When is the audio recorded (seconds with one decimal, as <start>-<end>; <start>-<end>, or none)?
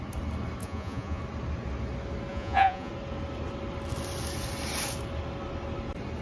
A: 0.0-0.6; 1.2-2.3; 2.9-6.2